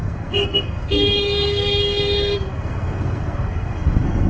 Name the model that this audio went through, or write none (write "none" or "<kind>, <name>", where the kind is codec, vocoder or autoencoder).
codec, SNAC